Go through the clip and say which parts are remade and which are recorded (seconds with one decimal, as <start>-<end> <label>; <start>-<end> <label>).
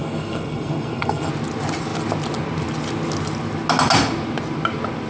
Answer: 0.0-1.3 remade; 1.3-5.1 recorded